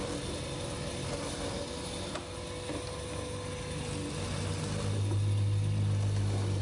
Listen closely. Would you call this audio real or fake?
real